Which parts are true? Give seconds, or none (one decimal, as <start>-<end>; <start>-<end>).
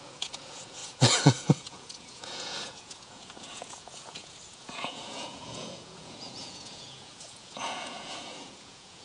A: none